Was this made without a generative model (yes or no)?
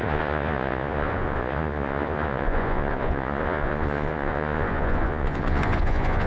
no